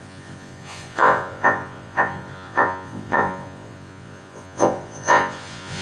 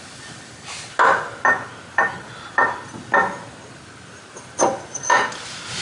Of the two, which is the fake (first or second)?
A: first